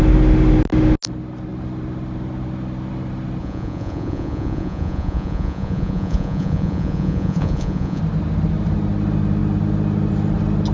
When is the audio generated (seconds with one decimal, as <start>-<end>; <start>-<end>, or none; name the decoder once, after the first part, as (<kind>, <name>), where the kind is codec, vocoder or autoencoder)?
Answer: 3.4-8.0 (vocoder, Vocos)

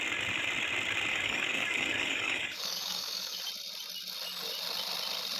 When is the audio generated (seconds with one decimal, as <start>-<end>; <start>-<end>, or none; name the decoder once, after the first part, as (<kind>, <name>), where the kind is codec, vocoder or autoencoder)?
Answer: 1.1-3.4 (codec, DAC)

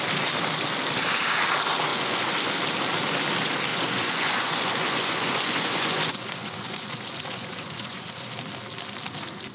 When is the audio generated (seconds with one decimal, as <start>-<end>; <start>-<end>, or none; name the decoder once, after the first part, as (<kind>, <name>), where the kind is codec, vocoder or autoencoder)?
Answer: 1.9-2.5 (vocoder, Vocos); 3.7-8.3

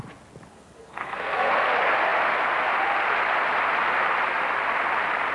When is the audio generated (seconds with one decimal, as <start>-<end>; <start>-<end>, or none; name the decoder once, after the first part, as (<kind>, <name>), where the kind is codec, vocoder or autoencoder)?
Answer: 0.5-1.5 (codec, SNAC)

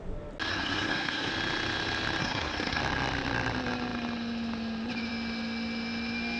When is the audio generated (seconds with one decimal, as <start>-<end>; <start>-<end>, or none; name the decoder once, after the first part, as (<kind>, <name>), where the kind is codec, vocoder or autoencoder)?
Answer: 0.5-1.3 (codec, SNAC); 2.2-2.8